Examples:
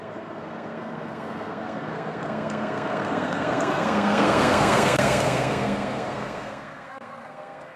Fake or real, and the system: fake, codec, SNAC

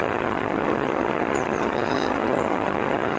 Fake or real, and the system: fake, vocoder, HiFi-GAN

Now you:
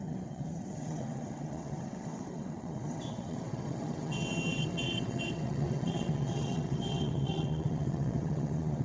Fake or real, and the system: fake, vocoder, WaveNeXt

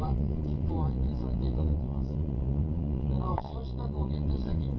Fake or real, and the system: fake, vocoder, Vocos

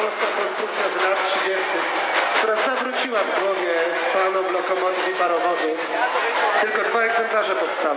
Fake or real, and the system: real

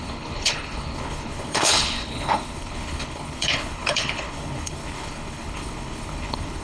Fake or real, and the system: fake, codec, HILCodec